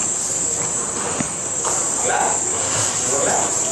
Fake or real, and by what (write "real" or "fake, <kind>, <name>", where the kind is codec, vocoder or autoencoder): real